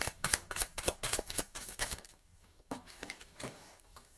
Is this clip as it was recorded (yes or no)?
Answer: no